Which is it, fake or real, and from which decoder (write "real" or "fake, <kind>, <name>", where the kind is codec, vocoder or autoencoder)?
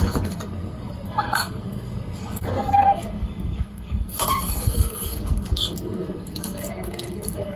fake, codec, SNAC